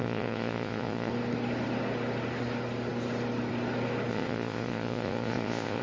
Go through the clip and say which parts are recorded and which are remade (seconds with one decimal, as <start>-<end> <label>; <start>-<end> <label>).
0.0-1.1 remade; 1.1-4.1 recorded; 4.1-5.8 remade